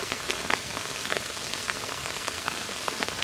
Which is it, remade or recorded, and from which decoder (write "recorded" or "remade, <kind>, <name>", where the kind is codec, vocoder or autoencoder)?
remade, codec, SNAC